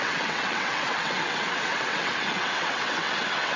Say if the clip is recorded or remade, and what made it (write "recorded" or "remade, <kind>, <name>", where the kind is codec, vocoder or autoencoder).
remade, vocoder, WaveNeXt